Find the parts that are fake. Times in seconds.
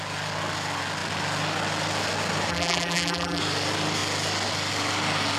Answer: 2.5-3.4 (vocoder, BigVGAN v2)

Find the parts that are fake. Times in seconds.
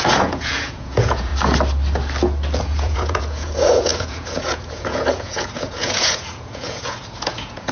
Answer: 0.0-1.3 (vocoder, Vocos); 2.6-7.7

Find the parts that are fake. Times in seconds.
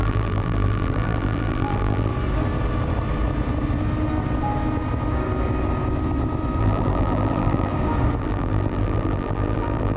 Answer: 0.0-2.1 (vocoder, BigVGAN v2); 6.6-7.7; 8.2-10.0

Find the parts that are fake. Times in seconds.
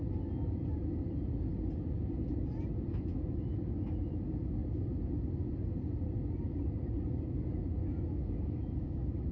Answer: 2.9-4.1 (autoencoder, DAC-VAE); 7.8-9.3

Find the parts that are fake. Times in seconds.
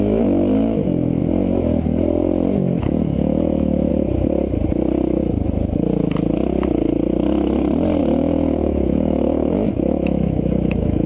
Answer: 0.0-1.2 (autoencoder, DAC-VAE); 2.8-3.9; 8.0-11.1